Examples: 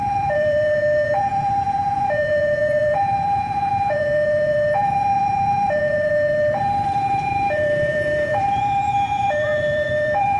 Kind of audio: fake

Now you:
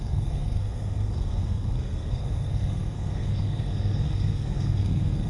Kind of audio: fake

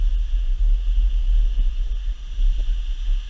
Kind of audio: real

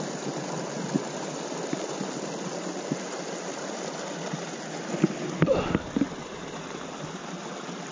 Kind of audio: real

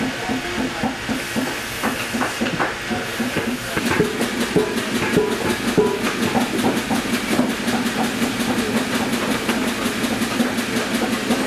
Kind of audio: real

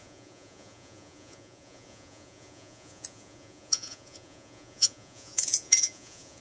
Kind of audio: fake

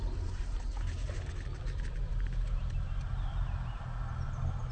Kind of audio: real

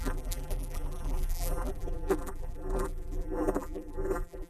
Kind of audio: fake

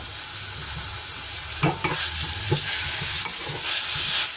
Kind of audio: real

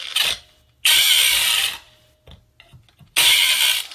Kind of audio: real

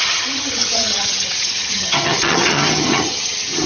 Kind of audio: fake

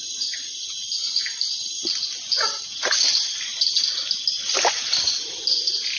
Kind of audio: real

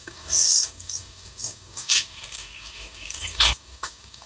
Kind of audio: fake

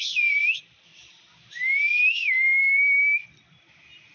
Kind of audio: real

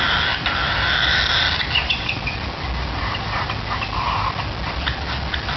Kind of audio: real